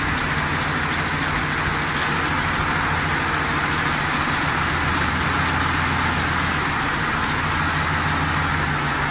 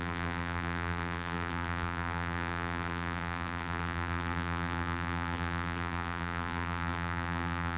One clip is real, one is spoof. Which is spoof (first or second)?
second